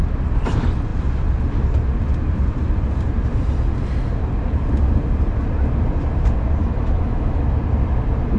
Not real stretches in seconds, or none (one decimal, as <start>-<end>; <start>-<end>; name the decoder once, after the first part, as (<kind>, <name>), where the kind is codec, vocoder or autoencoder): 6.6-7.4 (autoencoder, DAC-VAE)